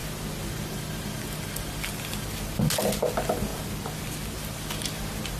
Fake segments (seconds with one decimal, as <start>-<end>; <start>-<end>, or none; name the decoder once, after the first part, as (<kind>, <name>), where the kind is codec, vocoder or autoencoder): none